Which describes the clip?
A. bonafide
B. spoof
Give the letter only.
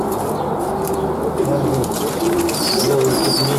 A